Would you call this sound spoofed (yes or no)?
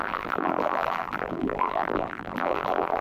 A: yes